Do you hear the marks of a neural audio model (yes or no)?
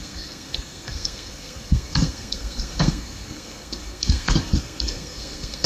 yes